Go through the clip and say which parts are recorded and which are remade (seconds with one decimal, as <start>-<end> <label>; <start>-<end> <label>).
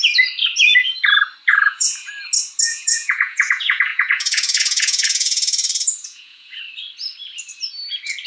0.0-1.5 recorded; 1.5-2.1 remade; 2.1-2.7 recorded; 2.7-6.6 remade; 6.6-8.3 recorded